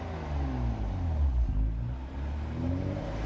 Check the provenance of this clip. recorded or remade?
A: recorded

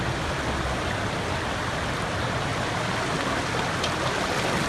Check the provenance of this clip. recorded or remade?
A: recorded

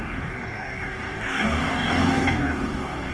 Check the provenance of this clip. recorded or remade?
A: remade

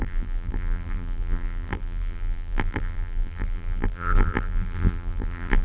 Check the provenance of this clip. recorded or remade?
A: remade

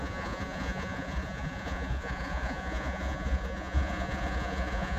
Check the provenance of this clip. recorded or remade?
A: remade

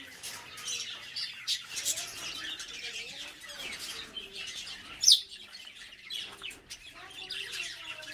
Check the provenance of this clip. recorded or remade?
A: recorded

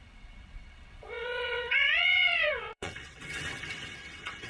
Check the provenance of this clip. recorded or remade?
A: remade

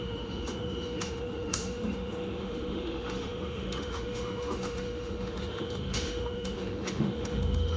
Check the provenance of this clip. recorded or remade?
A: remade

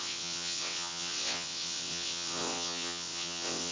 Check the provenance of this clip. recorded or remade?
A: remade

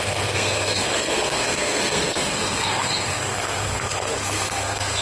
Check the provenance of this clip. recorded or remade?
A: remade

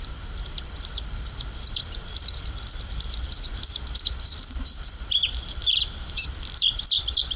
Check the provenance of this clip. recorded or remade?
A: remade